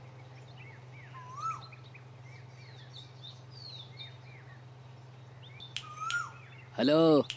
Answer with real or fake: real